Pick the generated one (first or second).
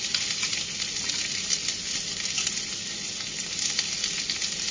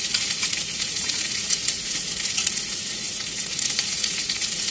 second